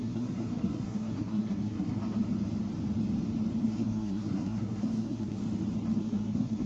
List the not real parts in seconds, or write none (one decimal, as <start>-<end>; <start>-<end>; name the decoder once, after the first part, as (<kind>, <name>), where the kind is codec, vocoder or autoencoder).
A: 0.0-2.0 (codec, SNAC); 3.6-5.4; 6.0-6.7